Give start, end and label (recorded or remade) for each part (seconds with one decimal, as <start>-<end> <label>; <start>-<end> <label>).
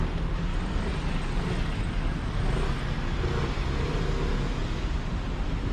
0.0-0.5 recorded; 0.5-2.8 remade; 2.8-5.7 recorded